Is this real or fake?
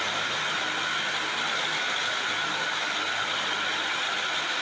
real